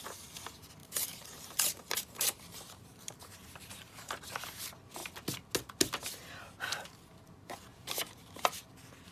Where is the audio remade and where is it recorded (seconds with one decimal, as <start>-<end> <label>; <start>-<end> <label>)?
0.0-0.8 recorded; 0.8-4.2 remade; 4.2-7.7 recorded; 7.7-8.6 remade; 8.6-9.1 recorded